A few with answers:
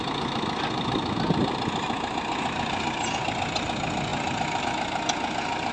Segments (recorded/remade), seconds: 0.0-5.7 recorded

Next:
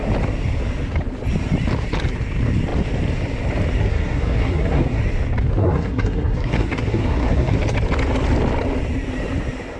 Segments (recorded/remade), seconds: 0.0-3.8 recorded; 3.8-5.0 remade; 5.0-5.6 recorded; 5.6-7.6 remade; 7.6-9.8 recorded

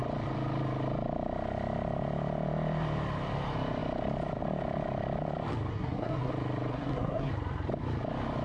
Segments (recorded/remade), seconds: 0.0-5.7 recorded; 5.7-6.3 remade; 6.3-6.7 recorded; 6.7-7.3 remade; 7.3-8.4 recorded

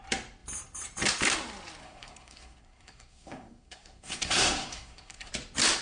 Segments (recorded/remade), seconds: 0.0-1.8 recorded; 1.8-5.3 remade; 5.3-5.8 recorded